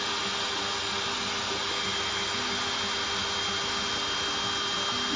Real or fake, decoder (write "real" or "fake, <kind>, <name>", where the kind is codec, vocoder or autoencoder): real